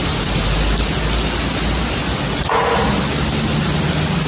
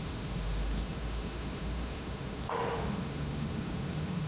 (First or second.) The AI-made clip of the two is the second